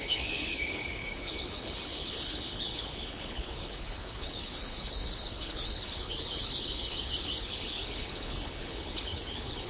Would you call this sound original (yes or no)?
no